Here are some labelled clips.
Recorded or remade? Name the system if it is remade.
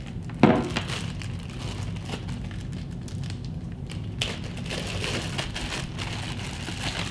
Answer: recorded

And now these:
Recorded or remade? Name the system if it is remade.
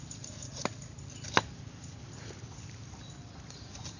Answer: recorded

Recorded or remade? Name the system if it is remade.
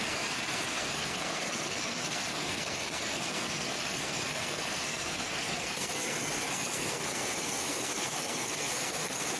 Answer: remade, codec, SNAC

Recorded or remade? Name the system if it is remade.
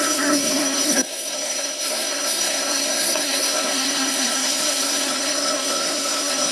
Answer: remade, codec, SNAC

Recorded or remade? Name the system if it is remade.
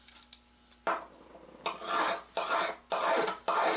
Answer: recorded